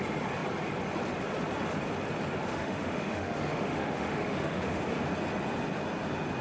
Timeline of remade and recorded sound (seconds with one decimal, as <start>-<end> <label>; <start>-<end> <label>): 0.0-2.5 recorded; 2.5-4.8 remade; 4.8-6.4 recorded